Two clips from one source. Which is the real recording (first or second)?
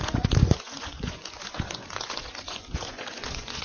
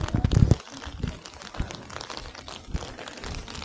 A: second